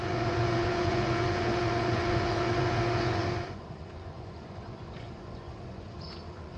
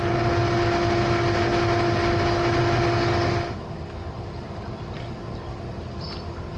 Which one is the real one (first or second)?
second